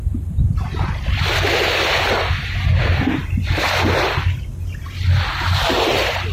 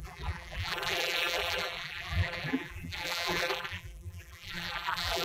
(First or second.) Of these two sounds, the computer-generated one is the second